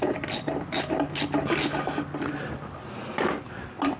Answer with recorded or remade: recorded